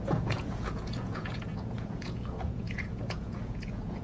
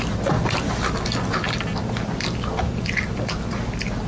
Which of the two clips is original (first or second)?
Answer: second